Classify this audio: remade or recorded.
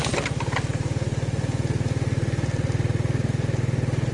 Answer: recorded